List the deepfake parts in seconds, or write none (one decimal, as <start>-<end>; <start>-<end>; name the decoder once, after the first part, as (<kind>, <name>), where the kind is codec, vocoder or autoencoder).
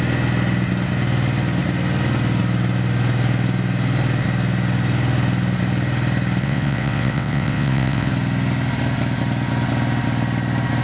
6.4-8.1 (vocoder, WaveNeXt)